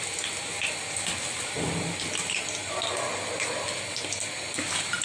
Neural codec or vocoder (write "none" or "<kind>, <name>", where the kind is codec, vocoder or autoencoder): none